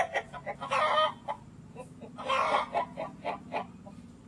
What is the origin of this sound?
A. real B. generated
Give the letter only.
A